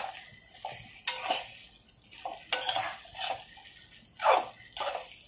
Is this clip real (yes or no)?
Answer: yes